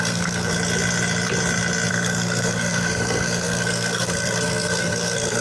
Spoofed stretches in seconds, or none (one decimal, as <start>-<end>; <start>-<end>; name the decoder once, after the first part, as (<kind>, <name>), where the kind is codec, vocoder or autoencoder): 0.0-0.5 (codec, SNAC); 1.9-5.4